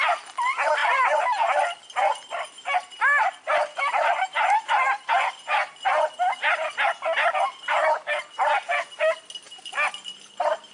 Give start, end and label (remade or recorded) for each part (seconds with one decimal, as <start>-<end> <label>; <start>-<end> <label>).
0.0-10.7 recorded